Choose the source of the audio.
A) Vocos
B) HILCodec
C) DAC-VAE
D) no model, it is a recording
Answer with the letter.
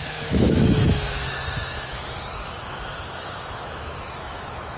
C